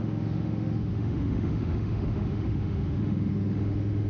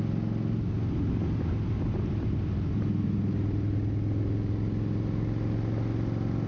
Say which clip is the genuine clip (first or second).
second